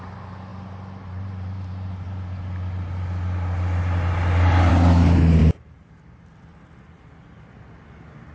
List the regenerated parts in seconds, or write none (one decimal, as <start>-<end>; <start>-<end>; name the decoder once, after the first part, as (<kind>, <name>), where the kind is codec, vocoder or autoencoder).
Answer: 5.4-6.3 (vocoder, BigVGAN v2)